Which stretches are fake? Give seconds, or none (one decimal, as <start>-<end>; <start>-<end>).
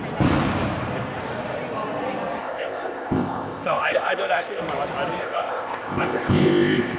2.4-4.6; 5.2-7.0